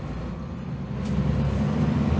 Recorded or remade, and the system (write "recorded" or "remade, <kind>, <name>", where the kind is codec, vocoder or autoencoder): recorded